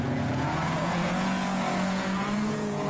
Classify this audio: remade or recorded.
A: remade